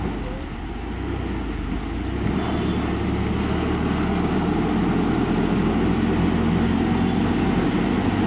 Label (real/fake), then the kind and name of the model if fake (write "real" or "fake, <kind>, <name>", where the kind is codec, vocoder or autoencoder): real